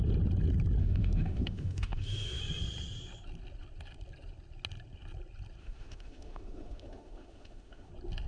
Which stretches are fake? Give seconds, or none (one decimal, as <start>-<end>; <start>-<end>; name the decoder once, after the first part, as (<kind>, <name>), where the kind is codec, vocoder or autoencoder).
0.8-2.4 (autoencoder, DAC-VAE); 5.6-7.9